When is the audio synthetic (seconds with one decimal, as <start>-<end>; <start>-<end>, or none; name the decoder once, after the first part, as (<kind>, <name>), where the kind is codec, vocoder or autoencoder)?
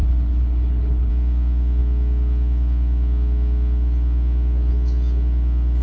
0.0-1.1 (codec, HILCodec)